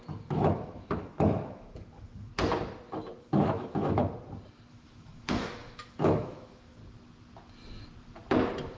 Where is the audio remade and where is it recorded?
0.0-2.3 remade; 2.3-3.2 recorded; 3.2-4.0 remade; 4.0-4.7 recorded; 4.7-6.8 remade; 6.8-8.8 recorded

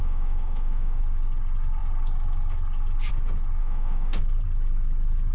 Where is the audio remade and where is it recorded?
0.0-1.0 remade; 1.0-3.6 recorded; 3.6-4.2 remade; 4.2-5.3 recorded

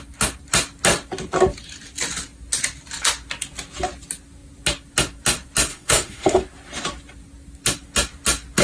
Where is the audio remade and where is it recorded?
0.0-5.7 recorded; 5.7-6.4 remade; 6.4-8.6 recorded

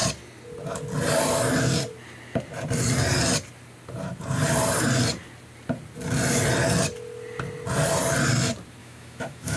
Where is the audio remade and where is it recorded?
0.0-8.8 recorded; 8.8-9.6 remade

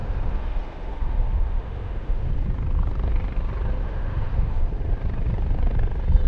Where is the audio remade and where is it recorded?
0.0-2.3 remade; 2.3-3.8 recorded; 3.8-4.7 remade; 4.7-6.3 recorded

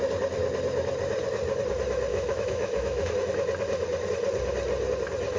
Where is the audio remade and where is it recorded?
0.0-2.1 recorded; 2.1-3.1 remade; 3.1-5.4 recorded